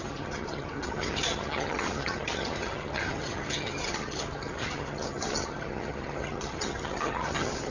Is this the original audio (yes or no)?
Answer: no